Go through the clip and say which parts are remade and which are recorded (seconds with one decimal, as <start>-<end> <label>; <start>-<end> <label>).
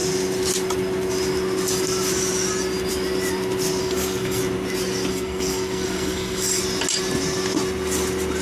0.0-3.8 recorded; 3.8-4.4 remade; 4.4-5.1 recorded; 5.1-6.6 remade; 6.6-8.4 recorded